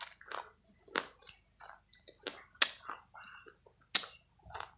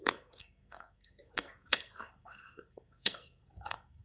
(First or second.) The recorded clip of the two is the first